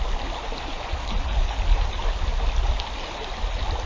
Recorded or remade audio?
recorded